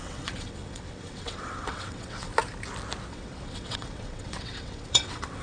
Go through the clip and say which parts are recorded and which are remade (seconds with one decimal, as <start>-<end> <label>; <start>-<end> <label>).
0.0-2.3 remade; 2.3-3.1 recorded; 3.1-5.4 remade